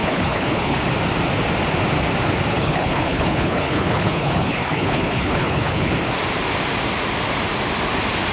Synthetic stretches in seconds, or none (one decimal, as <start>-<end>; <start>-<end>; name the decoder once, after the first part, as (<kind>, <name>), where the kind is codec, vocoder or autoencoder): 0.0-0.8 (codec, HILCodec); 2.5-5.9